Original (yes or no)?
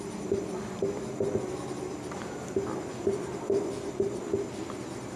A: yes